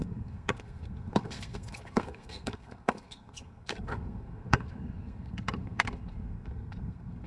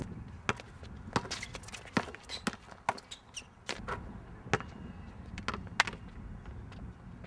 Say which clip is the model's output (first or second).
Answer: first